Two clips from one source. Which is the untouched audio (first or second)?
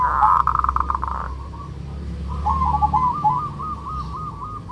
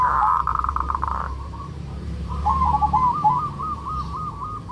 first